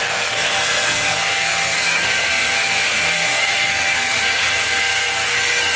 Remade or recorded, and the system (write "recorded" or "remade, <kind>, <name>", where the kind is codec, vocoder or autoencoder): remade, codec, SNAC